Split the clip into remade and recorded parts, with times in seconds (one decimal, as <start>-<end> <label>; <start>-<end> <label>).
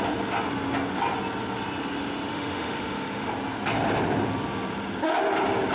0.0-2.3 recorded; 2.3-3.3 remade; 3.3-5.7 recorded